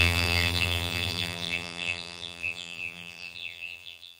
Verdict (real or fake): fake